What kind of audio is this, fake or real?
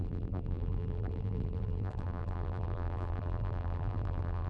fake